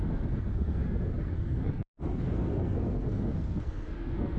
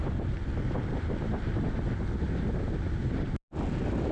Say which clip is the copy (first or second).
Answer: first